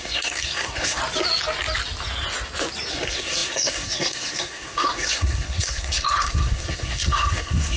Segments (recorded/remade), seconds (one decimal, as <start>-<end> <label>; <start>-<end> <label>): 0.0-1.0 remade; 1.0-2.9 recorded; 2.9-7.8 remade